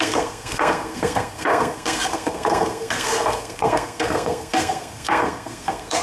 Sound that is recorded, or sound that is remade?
remade